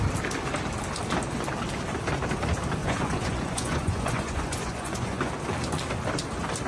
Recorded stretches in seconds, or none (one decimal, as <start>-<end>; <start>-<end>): 0.0-2.8; 5.3-6.7